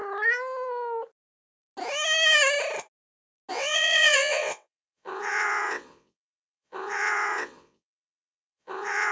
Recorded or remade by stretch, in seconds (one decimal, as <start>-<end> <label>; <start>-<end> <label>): 0.0-3.5 recorded; 3.5-9.1 remade